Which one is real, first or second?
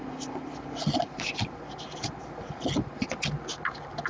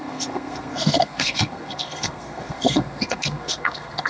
first